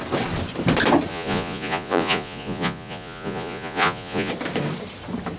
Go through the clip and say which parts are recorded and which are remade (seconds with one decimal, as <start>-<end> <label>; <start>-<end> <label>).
0.0-1.1 recorded; 1.1-4.3 remade; 4.3-5.4 recorded